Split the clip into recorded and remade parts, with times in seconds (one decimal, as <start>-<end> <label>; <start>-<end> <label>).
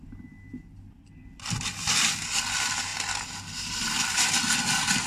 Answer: 0.0-5.1 recorded